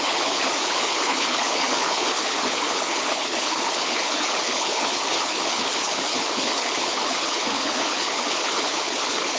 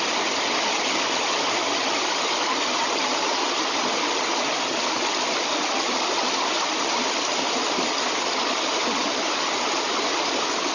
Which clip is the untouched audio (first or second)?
second